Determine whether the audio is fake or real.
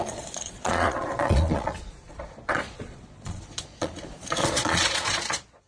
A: fake